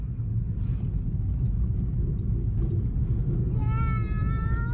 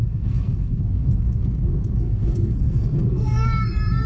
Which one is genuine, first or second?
first